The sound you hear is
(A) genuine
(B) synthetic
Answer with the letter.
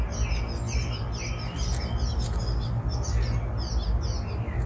A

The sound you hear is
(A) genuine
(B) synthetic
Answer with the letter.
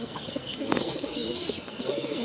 B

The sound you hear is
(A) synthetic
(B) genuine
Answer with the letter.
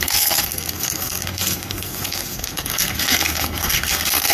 A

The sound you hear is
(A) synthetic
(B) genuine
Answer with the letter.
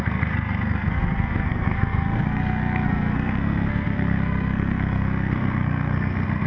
A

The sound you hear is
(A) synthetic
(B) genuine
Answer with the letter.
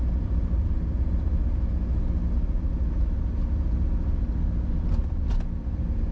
B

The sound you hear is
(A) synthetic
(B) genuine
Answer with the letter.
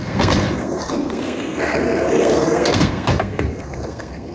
A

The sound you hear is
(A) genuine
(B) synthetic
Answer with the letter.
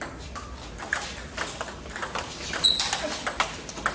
A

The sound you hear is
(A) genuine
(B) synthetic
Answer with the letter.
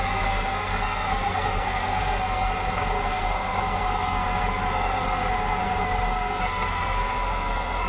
B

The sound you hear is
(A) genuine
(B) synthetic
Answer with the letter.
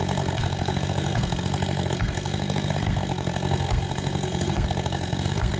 B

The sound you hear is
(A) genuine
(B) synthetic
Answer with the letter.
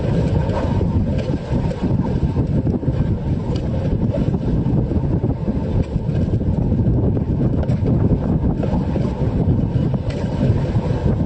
A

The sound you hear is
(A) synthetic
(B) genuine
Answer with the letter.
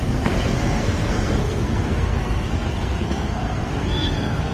A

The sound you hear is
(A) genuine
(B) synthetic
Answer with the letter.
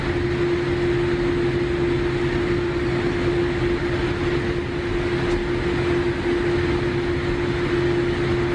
A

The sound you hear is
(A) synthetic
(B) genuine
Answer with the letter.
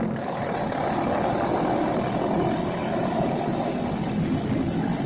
B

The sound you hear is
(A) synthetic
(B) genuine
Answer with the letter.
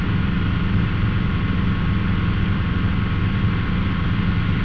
B